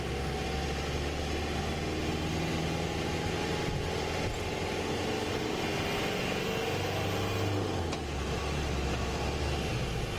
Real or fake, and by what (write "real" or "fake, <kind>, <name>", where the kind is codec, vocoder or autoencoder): real